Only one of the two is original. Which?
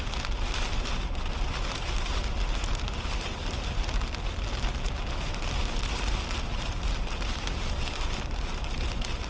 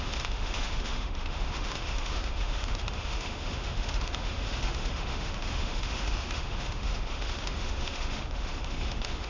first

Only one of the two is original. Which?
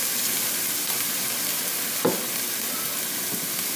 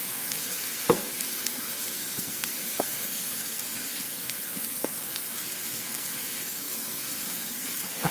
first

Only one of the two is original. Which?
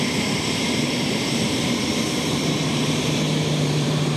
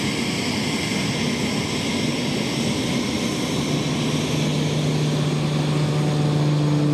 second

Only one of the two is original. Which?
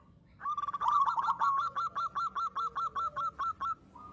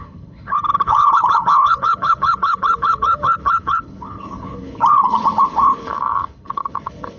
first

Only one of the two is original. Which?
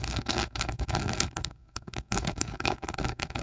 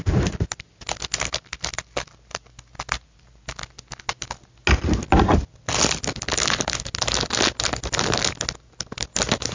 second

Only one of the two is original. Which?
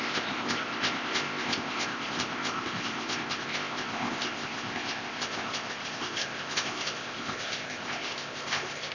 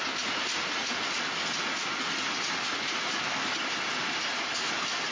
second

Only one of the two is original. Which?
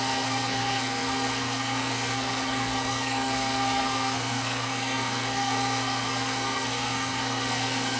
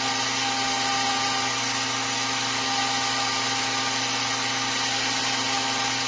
second